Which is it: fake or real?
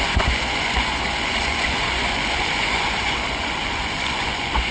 fake